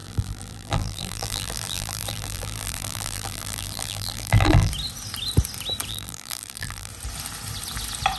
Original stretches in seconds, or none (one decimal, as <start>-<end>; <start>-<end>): 4.7-5.9; 6.9-8.2

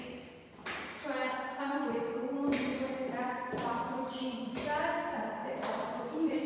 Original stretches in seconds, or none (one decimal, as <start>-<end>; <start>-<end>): 0.0-0.6; 1.6-2.7; 4.4-5.4